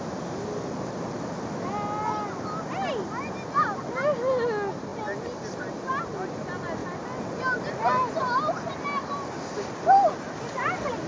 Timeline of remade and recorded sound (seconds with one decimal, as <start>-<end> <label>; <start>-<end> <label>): 0.0-11.1 recorded